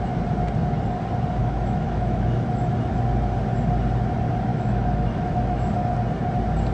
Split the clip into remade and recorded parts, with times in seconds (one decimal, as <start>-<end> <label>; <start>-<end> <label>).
0.0-1.4 recorded; 1.4-2.7 remade; 2.7-4.5 recorded; 4.5-5.9 remade; 5.9-6.7 recorded